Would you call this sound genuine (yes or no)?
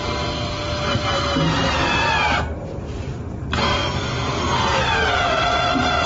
yes